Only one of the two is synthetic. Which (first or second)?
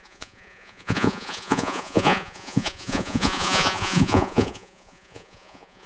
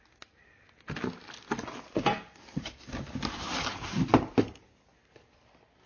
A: first